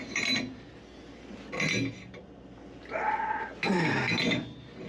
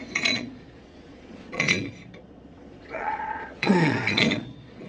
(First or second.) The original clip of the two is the first